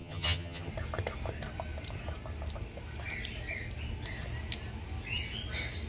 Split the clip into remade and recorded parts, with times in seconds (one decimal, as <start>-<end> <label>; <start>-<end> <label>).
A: 0.0-0.7 remade; 0.7-5.9 recorded